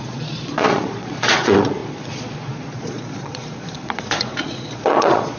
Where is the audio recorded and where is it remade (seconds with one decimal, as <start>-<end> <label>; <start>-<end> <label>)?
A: 0.0-5.4 remade